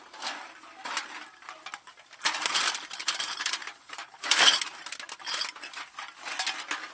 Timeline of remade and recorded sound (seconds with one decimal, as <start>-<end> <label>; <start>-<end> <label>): 0.0-3.0 recorded; 3.0-4.3 remade; 4.3-6.9 recorded